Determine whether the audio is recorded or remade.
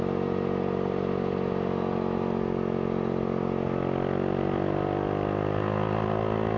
recorded